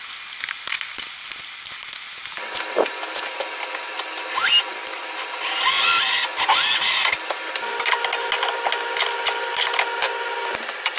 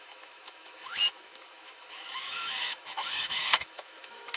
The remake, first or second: second